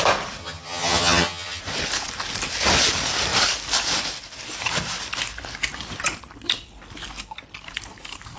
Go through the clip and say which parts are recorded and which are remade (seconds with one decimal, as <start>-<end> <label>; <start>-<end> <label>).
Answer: 0.0-0.4 recorded; 0.4-1.6 remade; 1.6-8.4 recorded